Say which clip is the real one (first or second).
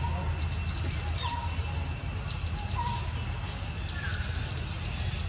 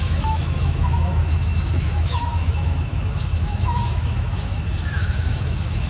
first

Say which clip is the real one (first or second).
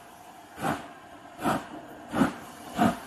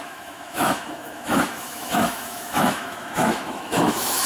first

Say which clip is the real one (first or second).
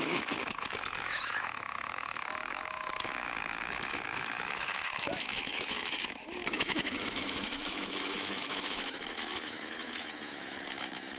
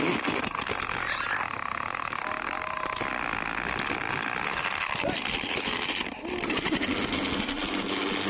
second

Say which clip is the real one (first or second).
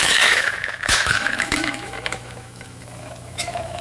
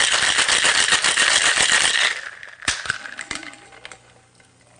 second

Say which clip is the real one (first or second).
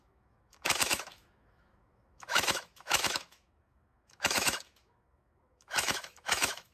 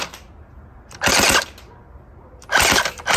second